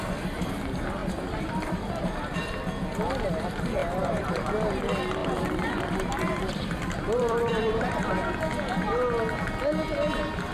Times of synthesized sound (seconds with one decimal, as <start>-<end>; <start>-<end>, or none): 1.0-2.4; 5.2-8.1